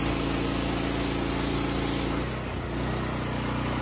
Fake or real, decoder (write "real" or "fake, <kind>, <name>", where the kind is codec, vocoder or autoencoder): real